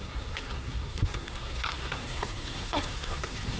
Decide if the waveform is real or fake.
fake